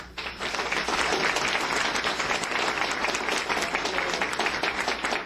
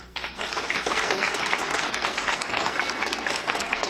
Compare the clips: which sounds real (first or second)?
first